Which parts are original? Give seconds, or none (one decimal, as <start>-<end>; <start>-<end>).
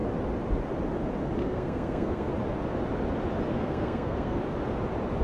0.0-1.4; 2.3-3.5; 4.4-5.2